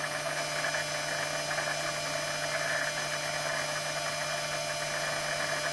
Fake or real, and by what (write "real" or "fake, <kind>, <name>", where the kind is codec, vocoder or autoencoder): real